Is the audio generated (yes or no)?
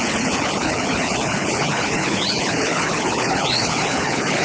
yes